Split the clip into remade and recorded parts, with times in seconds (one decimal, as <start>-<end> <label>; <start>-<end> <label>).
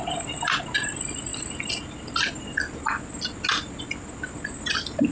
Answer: 0.0-5.1 recorded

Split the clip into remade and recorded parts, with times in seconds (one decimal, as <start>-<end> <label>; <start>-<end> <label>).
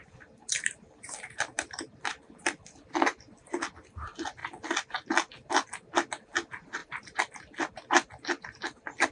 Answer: 0.0-0.5 recorded; 0.5-2.4 remade; 2.4-6.8 recorded; 6.8-7.3 remade; 7.3-9.1 recorded